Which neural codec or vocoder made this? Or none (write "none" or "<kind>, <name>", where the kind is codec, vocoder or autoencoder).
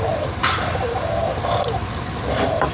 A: none